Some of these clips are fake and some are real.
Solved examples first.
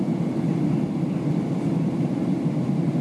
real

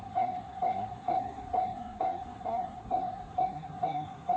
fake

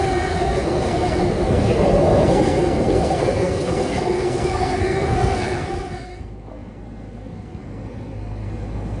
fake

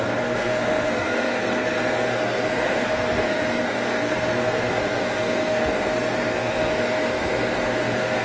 fake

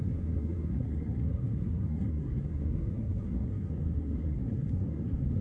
fake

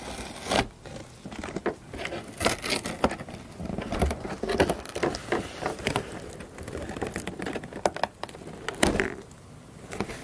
real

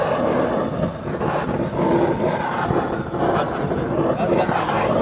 real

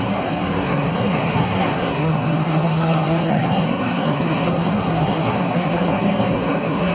fake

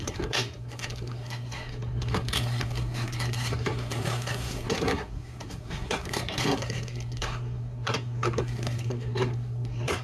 fake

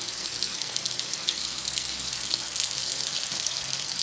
fake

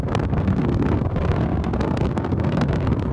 fake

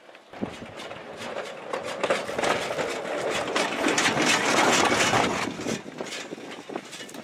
real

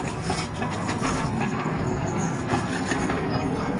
fake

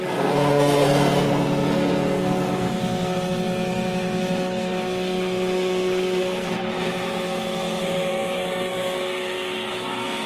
fake